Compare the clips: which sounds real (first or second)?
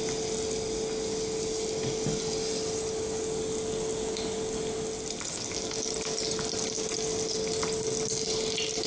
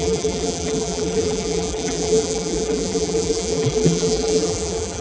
first